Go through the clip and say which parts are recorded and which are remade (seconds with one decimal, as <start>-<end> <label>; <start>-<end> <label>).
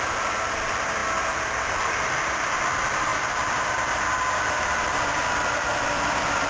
0.0-1.0 remade; 1.0-1.6 recorded; 1.6-3.1 remade; 3.1-4.3 recorded; 4.3-6.5 remade